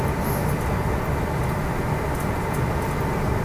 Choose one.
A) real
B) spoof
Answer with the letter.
A